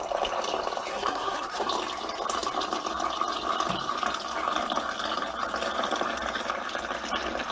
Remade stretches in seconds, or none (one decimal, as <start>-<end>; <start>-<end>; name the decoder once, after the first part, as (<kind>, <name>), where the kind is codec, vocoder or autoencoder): 0.9-1.7 (codec, SNAC)